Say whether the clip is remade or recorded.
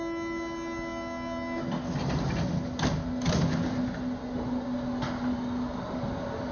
recorded